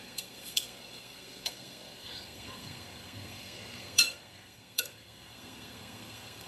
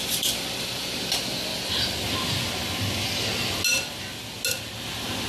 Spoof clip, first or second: first